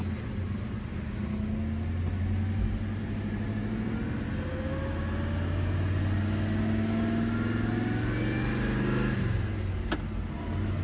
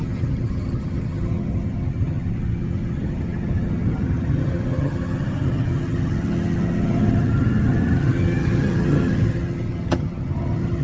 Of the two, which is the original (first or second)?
first